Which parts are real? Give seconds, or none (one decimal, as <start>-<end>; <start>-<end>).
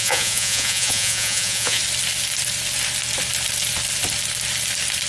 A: 1.8-5.1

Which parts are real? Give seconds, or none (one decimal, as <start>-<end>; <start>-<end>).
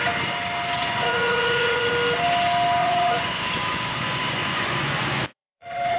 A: 0.0-0.8; 1.9-2.8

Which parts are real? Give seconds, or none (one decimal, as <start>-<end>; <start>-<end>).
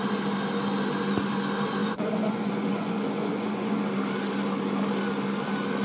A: 0.0-1.8; 3.8-5.8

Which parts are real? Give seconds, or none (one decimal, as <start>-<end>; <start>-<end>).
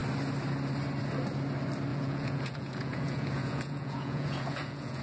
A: 0.0-1.9